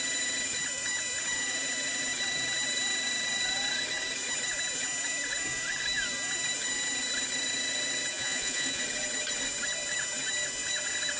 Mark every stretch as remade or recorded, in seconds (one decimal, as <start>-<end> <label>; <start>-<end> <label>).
0.0-8.1 recorded; 8.1-8.8 remade; 8.8-11.2 recorded